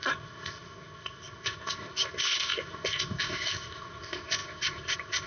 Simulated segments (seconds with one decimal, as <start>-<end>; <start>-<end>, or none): 0.0-5.3